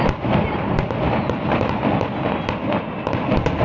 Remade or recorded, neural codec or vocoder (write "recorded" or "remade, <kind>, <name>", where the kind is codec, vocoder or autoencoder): recorded